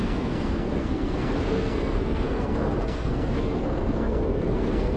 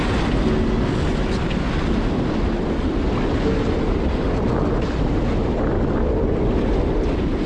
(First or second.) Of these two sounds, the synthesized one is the first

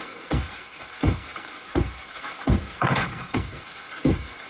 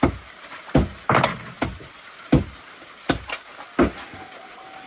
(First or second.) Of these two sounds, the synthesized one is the first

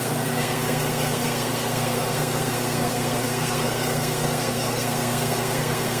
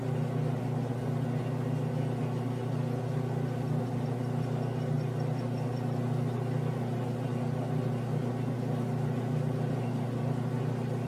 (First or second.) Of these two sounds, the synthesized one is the first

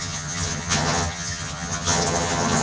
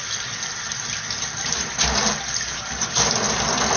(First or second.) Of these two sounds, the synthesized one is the first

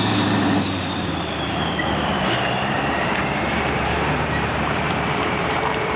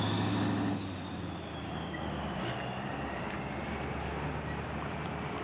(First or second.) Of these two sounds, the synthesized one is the first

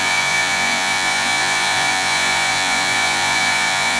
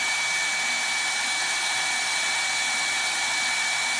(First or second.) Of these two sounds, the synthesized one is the first